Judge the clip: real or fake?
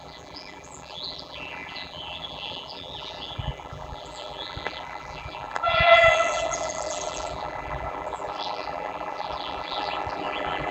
fake